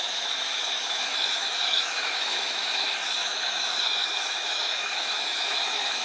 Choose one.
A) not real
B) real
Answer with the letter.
A